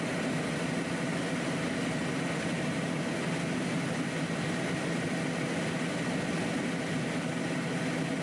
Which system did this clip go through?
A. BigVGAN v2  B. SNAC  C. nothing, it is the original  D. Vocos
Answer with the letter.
C